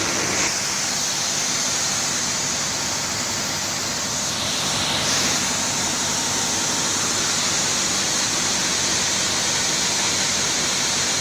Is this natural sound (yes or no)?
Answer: yes